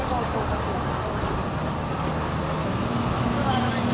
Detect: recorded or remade recorded